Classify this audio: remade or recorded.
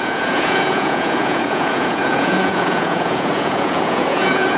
remade